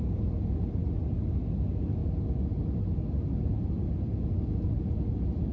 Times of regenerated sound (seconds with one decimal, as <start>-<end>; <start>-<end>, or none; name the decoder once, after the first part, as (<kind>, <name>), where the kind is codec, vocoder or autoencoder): none